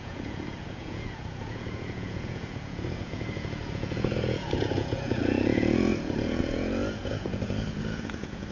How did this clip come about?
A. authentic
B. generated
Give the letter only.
B